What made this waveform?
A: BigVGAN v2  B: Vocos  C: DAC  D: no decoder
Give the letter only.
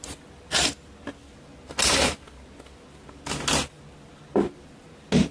D